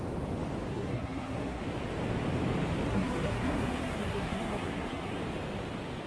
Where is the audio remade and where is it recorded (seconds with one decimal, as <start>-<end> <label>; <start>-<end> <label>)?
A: 0.0-0.7 recorded; 0.7-1.6 remade; 1.6-2.9 recorded; 2.9-5.2 remade; 5.2-6.1 recorded